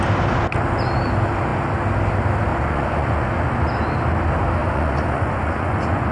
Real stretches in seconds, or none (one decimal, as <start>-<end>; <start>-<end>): 0.0-2.5; 3.3-4.6